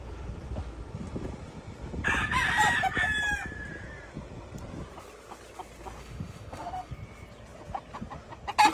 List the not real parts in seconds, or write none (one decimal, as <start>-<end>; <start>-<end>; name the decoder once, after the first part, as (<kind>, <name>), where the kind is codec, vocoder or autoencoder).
6.0-6.9 (autoencoder, DAC-VAE)